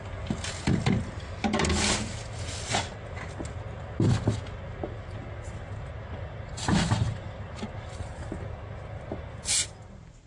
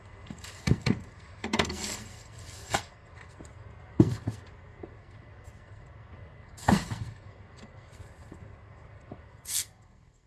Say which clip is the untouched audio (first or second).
first